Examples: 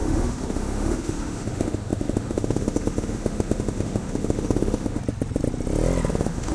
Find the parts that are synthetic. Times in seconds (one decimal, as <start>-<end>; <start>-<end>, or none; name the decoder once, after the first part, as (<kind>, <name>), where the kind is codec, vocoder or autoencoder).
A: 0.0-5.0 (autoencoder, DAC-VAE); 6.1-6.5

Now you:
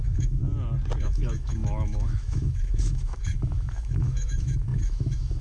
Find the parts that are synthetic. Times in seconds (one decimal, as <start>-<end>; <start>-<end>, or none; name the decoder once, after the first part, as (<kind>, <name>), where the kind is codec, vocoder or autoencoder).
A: 0.0-0.4 (autoencoder, DAC-VAE); 1.0-5.4

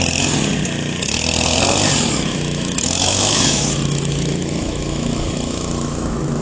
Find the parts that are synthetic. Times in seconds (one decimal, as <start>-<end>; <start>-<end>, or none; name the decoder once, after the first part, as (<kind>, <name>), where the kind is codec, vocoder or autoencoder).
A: 2.3-6.4 (autoencoder, DAC-VAE)

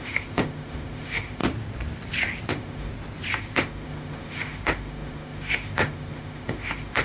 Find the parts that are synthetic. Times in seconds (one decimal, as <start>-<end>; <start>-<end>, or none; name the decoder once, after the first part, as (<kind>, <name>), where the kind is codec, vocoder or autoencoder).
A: 0.0-1.4 (autoencoder, DAC-VAE); 2.5-2.9; 3.4-7.0

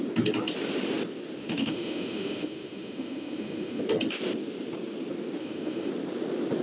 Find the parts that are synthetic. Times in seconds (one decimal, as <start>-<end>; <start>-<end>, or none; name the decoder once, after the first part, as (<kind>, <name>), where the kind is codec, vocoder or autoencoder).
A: 1.4-3.8 (autoencoder, DAC-VAE); 5.4-5.9